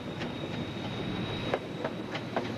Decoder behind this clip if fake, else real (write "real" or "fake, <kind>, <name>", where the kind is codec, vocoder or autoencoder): real